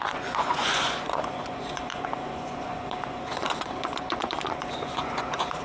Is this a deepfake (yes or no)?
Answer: yes